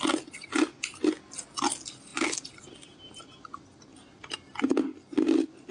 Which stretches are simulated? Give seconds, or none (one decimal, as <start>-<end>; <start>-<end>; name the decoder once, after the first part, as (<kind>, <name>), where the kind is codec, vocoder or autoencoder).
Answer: none